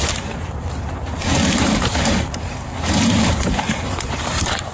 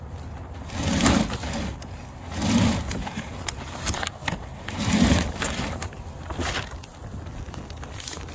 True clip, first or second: second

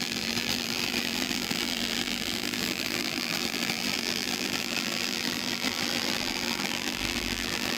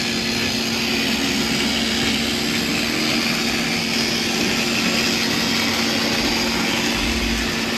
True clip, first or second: second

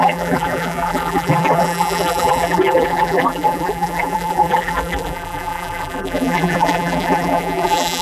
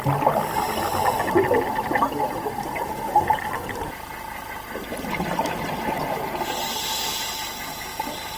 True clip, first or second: second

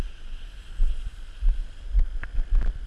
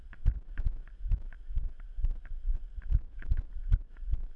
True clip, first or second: first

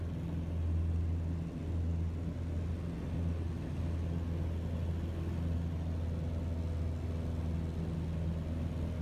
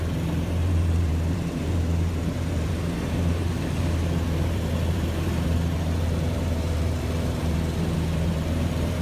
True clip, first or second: first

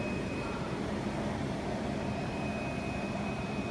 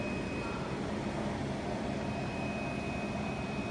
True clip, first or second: second